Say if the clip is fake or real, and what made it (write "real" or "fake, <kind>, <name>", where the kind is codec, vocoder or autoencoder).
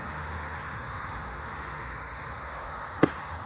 fake, autoencoder, DAC-VAE